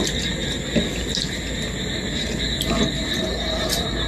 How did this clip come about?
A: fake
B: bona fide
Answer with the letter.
B